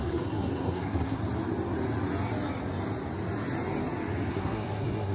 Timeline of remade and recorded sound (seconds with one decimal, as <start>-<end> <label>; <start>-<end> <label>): 0.0-1.2 remade; 1.2-4.3 recorded; 4.3-5.1 remade